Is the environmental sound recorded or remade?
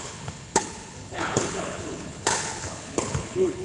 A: remade